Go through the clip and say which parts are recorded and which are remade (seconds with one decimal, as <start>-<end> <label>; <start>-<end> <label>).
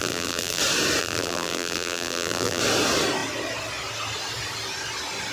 0.0-0.6 remade; 0.6-1.0 recorded; 1.0-2.6 remade; 2.6-5.3 recorded